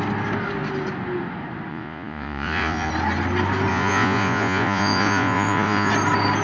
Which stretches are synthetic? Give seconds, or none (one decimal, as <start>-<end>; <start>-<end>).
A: 1.7-2.9; 3.7-5.9